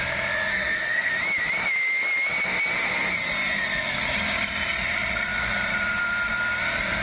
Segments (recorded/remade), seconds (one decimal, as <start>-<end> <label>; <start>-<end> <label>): 0.0-0.5 recorded; 0.5-1.1 remade; 1.1-7.0 recorded